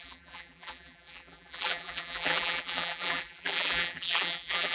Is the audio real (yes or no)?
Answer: no